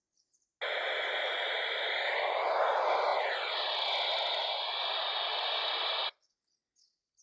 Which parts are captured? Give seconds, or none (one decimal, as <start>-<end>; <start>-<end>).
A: 0.0-7.2